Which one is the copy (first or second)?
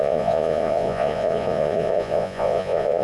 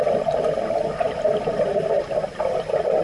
first